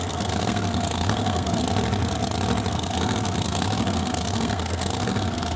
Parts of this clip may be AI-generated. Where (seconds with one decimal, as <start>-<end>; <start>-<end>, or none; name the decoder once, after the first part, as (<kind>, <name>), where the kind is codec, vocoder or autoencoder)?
0.0-1.6 (codec, SNAC); 2.7-5.6